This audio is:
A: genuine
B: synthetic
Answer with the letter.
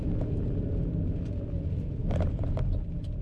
A